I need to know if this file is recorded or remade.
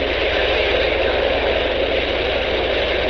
recorded